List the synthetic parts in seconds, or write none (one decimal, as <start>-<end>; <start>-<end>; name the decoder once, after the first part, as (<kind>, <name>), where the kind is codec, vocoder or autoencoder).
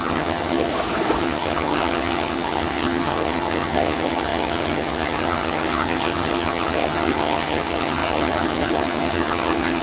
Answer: 0.0-0.7 (vocoder, HiFi-GAN); 1.2-9.8